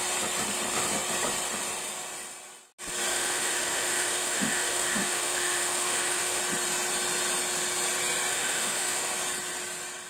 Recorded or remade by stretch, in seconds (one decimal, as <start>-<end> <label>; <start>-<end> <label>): 0.0-3.1 recorded; 3.1-6.4 remade; 6.4-8.3 recorded; 8.3-9.1 remade; 9.1-10.1 recorded